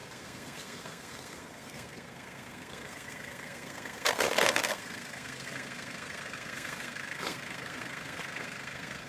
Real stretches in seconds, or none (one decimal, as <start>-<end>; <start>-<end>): none